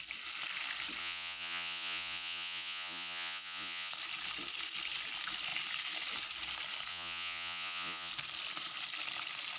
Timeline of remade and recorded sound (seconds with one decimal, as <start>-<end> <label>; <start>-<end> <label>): 0.0-1.0 recorded; 1.0-3.9 remade; 3.9-6.9 recorded; 6.9-8.1 remade; 8.1-9.6 recorded